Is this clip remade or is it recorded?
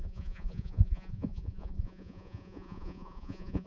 remade